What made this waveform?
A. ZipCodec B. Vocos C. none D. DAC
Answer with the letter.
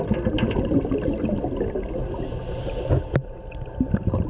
C